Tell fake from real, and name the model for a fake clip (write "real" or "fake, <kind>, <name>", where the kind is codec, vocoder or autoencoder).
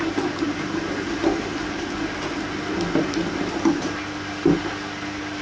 real